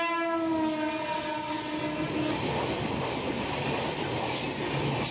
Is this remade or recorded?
recorded